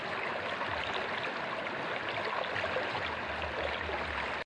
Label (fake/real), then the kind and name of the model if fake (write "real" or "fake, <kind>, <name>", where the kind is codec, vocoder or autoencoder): real